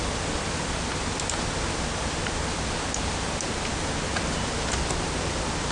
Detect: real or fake real